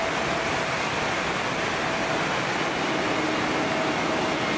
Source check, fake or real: real